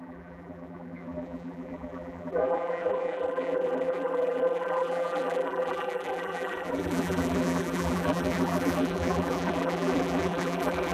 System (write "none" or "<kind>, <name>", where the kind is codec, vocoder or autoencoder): vocoder, BigVGAN v2